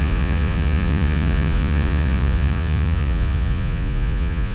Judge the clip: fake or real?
fake